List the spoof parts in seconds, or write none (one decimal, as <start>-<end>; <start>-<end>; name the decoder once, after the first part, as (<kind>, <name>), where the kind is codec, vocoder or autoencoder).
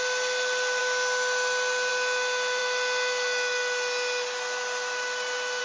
none